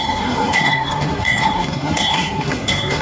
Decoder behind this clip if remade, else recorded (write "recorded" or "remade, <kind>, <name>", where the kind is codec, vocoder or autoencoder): remade, codec, SNAC